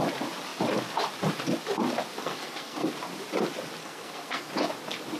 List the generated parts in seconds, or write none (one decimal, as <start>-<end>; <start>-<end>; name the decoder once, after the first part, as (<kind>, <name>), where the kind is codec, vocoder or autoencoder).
2.2-2.9 (codec, SNAC); 3.8-4.5